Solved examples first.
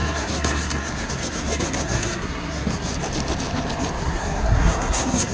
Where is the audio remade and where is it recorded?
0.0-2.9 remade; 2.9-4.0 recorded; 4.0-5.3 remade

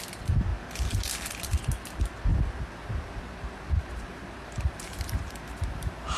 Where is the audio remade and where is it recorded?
0.0-2.3 recorded; 2.3-6.2 remade

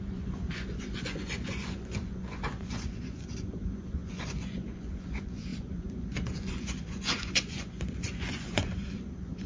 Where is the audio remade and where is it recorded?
0.0-9.5 remade

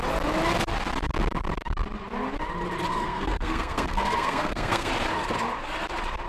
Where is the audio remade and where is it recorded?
0.0-2.9 recorded; 2.9-4.9 remade; 4.9-6.3 recorded

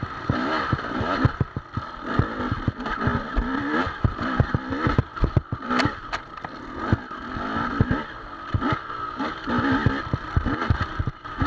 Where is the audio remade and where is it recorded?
0.0-11.5 recorded

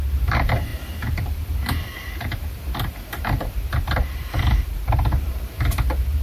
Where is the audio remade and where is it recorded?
0.0-6.2 remade

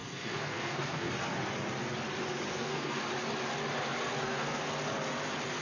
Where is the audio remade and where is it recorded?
0.0-1.1 remade; 1.1-2.5 recorded; 2.5-3.0 remade; 3.0-4.1 recorded; 4.1-4.7 remade; 4.7-5.6 recorded

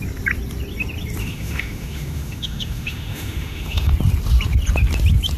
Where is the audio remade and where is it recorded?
0.0-1.2 recorded; 1.2-3.9 remade; 3.9-5.4 recorded